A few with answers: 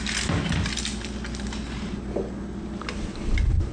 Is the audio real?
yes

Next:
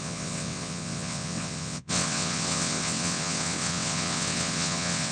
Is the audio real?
no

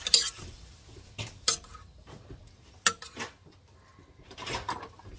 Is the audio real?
yes